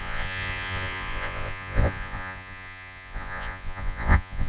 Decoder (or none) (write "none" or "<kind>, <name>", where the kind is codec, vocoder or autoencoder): vocoder, Vocos